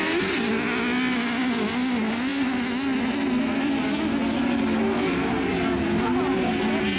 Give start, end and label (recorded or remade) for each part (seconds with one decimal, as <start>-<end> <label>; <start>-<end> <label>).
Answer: 0.0-7.0 recorded